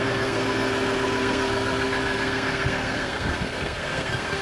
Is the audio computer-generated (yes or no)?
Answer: yes